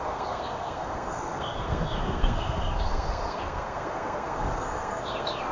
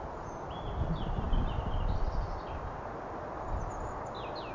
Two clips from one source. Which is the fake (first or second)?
first